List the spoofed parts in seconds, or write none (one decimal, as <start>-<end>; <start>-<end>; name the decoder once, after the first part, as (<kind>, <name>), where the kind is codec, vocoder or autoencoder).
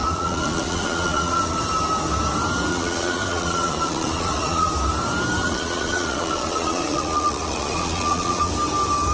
0.0-1.6 (vocoder, Vocos); 2.7-4.7; 5.4-8.5